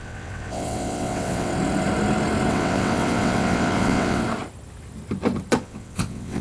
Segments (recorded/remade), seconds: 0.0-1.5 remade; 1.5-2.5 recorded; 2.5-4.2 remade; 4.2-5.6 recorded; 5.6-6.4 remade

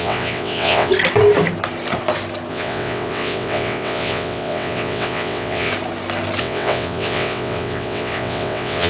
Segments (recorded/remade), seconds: 0.0-0.9 remade; 0.9-2.5 recorded; 2.5-5.7 remade; 5.7-6.4 recorded; 6.4-8.9 remade

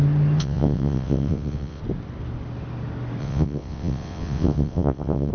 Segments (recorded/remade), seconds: 0.0-0.4 recorded; 0.4-1.8 remade; 1.8-3.2 recorded; 3.2-5.3 remade

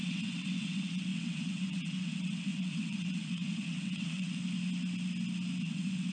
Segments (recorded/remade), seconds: 0.0-4.4 remade; 4.4-5.6 recorded; 5.6-6.1 remade